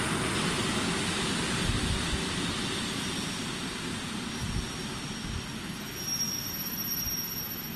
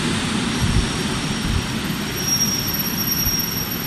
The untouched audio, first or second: first